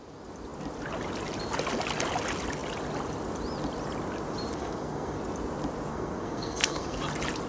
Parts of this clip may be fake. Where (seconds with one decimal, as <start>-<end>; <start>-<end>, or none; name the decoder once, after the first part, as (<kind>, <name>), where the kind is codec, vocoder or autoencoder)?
4.5-5.2 (codec, SNAC); 5.9-7.0